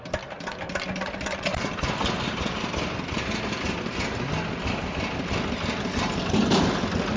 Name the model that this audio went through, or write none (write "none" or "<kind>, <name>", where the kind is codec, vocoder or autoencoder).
none